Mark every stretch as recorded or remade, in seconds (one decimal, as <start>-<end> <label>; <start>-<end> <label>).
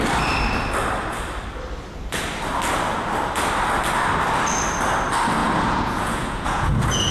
0.0-5.4 recorded; 5.4-7.1 remade